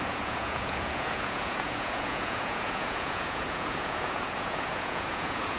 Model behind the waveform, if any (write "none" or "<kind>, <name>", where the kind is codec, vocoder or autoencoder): vocoder, Vocos